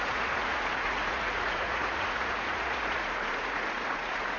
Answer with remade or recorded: remade